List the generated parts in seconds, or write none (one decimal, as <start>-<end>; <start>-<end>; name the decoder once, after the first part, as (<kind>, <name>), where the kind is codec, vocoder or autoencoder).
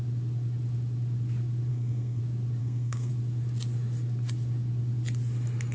1.7-2.2 (codec, SNAC); 2.6-3.1